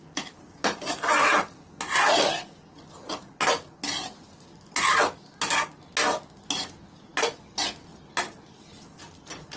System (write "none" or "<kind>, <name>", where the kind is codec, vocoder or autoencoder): none